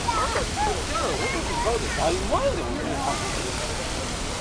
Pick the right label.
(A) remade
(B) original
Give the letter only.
B